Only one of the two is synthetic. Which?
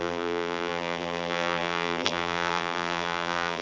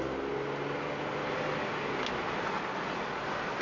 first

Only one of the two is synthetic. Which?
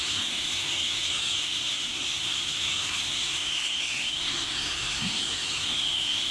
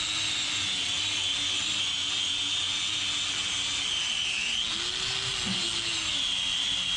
first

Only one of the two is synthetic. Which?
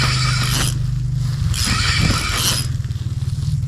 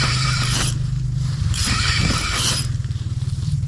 second